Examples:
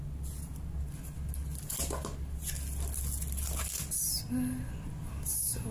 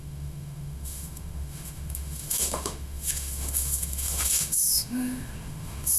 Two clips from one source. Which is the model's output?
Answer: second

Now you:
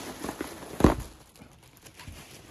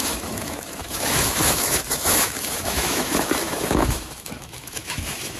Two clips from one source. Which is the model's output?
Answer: second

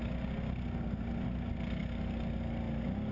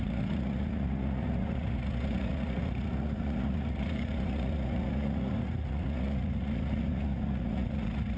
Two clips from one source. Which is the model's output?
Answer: second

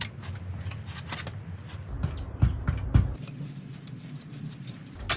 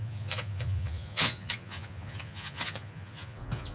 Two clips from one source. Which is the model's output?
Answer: second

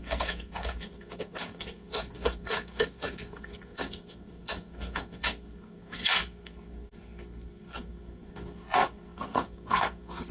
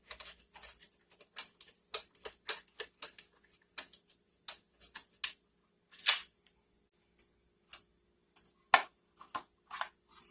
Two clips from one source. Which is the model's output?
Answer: first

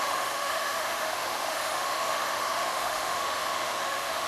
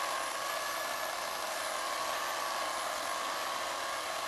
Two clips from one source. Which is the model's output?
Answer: first